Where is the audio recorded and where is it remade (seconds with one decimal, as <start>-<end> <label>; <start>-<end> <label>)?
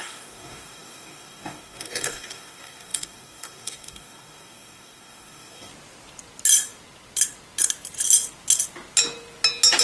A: 0.0-5.7 remade; 5.7-9.8 recorded